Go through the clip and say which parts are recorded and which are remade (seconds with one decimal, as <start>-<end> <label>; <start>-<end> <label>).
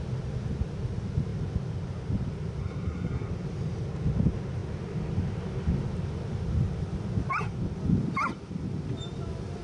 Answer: 0.0-2.6 recorded; 2.6-3.3 remade; 3.3-9.6 recorded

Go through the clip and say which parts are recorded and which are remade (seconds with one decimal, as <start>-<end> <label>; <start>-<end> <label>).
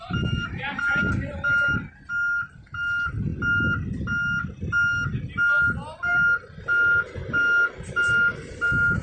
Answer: 0.0-9.0 recorded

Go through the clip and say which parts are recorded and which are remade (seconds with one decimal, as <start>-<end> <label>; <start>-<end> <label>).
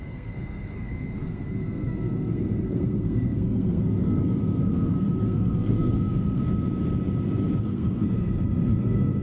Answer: 0.0-6.4 remade; 6.4-7.6 recorded; 7.6-9.2 remade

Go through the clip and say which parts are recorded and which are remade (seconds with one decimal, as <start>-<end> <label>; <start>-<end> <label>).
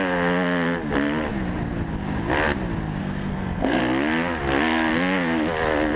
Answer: 0.0-3.0 recorded; 3.0-3.8 remade; 3.8-6.0 recorded